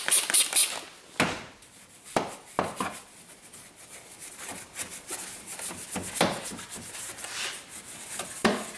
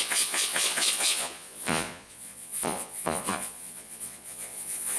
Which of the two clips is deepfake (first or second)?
second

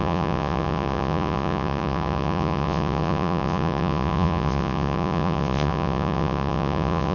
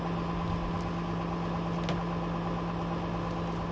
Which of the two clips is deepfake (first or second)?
first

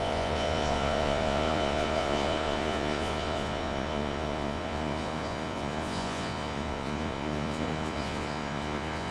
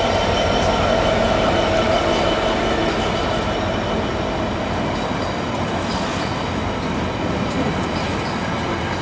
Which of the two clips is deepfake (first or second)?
first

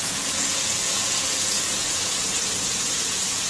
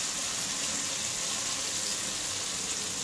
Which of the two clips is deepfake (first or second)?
first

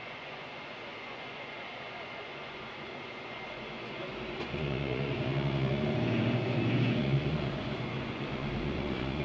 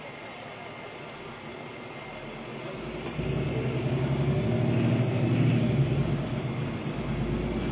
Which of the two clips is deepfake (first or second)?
first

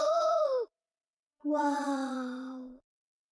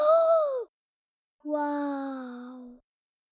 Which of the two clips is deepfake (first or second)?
first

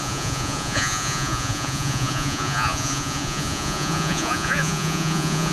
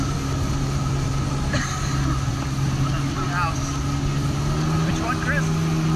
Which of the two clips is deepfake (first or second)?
first